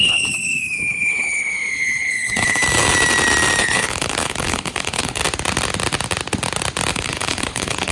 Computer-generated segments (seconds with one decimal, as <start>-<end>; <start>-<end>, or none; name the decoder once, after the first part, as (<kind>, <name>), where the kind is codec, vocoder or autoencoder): 0.0-2.6 (codec, HILCodec); 3.6-5.2; 6.9-7.9